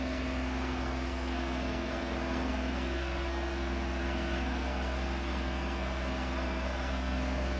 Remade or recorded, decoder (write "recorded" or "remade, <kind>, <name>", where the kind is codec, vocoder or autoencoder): remade, codec, SNAC